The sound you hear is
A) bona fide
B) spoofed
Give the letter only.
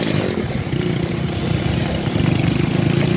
A